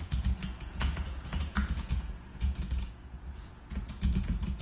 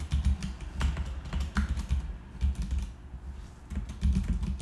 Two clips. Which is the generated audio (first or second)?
first